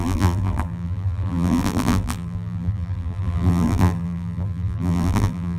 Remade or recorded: remade